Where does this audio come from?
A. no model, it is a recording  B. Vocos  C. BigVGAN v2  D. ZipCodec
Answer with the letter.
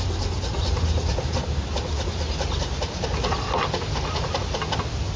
A